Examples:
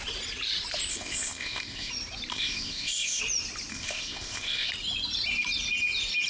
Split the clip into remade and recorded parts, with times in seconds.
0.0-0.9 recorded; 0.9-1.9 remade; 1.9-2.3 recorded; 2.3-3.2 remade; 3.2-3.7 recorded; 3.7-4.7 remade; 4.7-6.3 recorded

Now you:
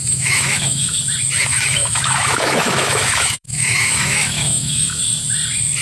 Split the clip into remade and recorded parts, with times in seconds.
0.0-1.0 remade; 1.0-1.5 recorded; 1.5-5.0 remade; 5.0-5.8 recorded

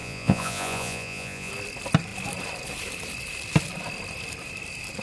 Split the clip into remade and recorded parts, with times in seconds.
0.0-1.5 remade; 1.5-5.0 recorded

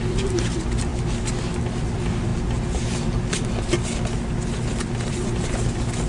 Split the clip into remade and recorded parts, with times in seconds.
0.0-0.9 remade; 0.9-1.9 recorded; 1.9-2.3 remade; 2.3-6.1 recorded